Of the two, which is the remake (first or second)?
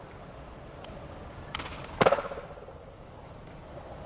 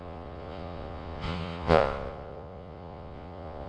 second